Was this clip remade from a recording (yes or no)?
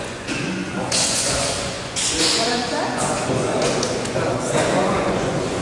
yes